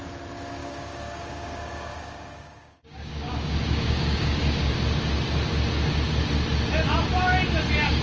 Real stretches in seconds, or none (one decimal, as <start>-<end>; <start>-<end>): 0.0-0.6; 4.7-8.0